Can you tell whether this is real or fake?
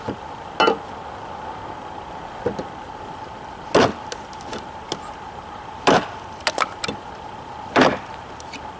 real